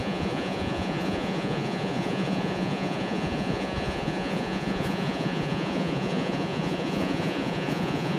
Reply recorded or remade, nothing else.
remade